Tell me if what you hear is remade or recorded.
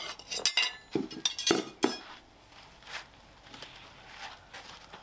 recorded